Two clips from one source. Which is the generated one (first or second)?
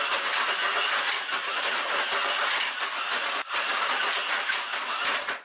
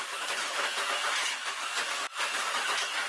second